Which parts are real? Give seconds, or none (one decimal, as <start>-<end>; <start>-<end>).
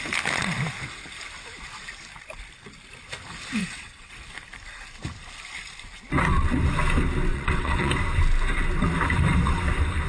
0.0-3.6; 4.1-7.3; 7.9-10.1